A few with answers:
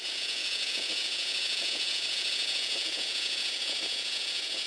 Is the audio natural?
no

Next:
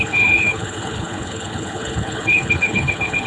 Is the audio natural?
no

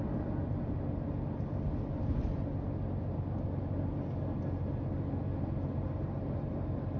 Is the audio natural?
yes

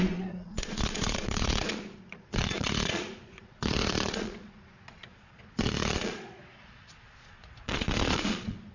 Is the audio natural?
no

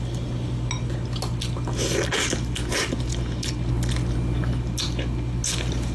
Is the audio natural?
yes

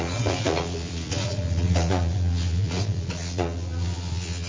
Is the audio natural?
no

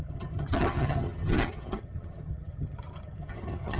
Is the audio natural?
no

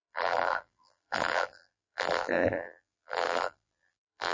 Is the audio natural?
no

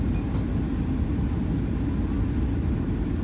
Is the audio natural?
yes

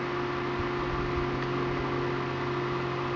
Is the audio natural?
yes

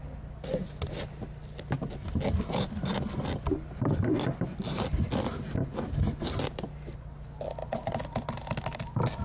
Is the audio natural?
yes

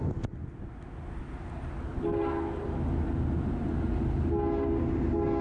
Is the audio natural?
yes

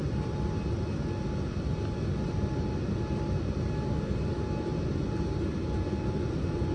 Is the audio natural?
yes